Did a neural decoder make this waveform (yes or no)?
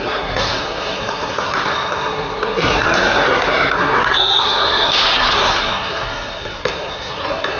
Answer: yes